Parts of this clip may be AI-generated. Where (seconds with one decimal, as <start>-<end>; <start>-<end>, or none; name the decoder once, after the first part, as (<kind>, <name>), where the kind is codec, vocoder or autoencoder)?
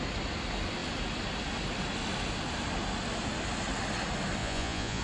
4.4-5.0 (vocoder, Vocos)